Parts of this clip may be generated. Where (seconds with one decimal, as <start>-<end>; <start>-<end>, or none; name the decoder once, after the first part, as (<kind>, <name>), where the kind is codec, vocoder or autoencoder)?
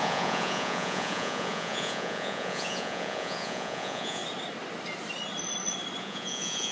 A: 0.0-4.2 (vocoder, Vocos); 6.0-6.7